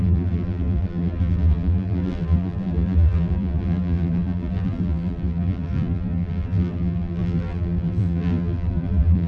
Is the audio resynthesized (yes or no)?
yes